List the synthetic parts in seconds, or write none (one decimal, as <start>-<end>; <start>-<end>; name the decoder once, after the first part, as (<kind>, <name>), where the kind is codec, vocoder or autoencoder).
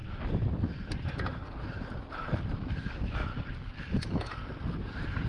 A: 2.7-3.3 (autoencoder, DAC-VAE); 3.9-4.4